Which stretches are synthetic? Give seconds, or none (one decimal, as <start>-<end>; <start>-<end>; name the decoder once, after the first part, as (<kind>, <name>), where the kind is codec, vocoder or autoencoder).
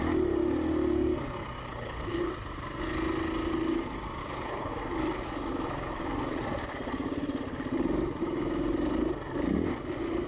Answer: 1.7-2.3 (codec, HILCodec); 4.2-4.7